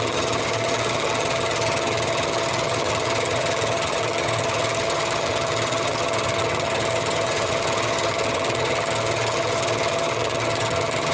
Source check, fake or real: fake